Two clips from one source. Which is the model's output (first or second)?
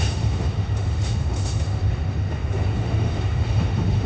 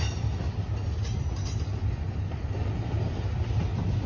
first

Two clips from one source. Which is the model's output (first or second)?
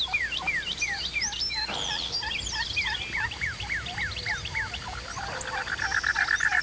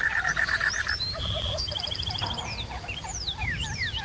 second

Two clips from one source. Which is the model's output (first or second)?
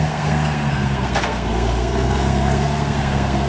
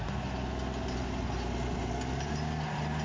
first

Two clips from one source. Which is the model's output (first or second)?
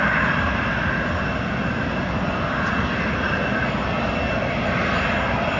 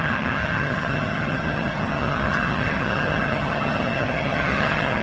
second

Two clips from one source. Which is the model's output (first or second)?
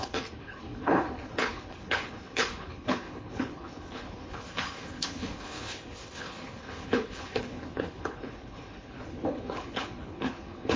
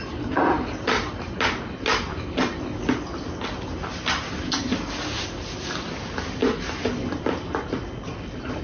first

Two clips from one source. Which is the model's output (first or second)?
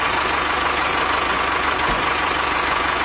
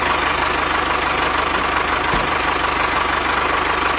first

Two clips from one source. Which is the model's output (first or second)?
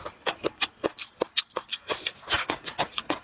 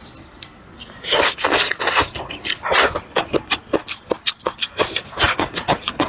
second